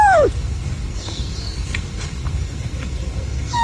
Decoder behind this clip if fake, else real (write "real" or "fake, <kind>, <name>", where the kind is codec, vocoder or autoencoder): fake, codec, SNAC